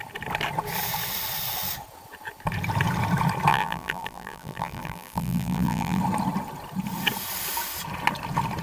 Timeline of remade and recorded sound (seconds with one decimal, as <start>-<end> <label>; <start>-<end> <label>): 0.0-3.5 recorded; 3.5-6.0 remade; 6.0-8.6 recorded